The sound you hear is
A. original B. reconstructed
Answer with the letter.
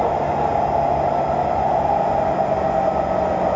A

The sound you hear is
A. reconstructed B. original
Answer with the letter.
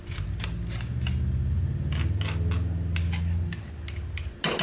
B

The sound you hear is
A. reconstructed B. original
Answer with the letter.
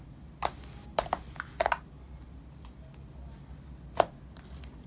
B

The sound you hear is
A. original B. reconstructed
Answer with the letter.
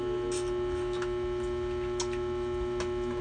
A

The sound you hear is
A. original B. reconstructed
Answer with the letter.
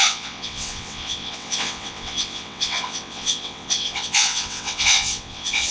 B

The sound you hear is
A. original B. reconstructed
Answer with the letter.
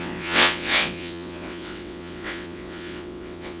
B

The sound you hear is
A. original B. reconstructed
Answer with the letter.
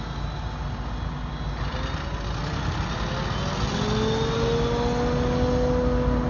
A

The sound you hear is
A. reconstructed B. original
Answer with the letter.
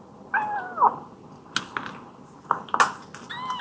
B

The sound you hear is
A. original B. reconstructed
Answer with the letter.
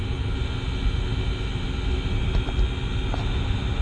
A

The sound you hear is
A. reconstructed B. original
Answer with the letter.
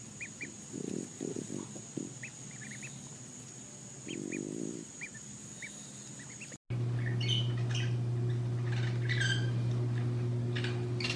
B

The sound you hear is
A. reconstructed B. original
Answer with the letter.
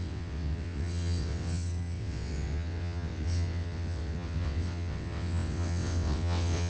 A